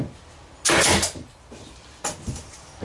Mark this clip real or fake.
real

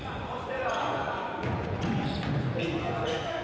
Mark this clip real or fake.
fake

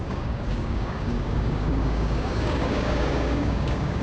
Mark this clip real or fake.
fake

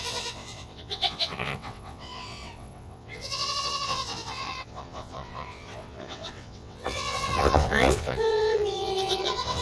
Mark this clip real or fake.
fake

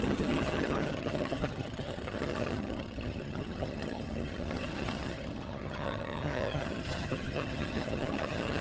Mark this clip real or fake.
fake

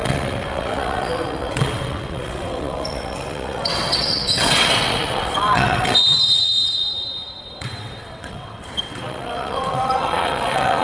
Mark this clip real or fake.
fake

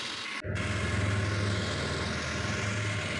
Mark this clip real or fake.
real